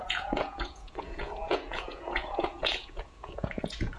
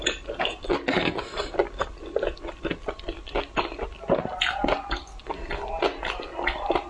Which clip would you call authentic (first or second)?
second